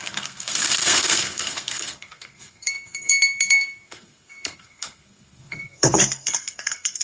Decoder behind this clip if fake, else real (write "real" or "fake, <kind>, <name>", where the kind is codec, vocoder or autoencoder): fake, codec, SNAC